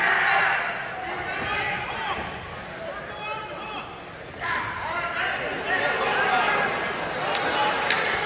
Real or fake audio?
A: real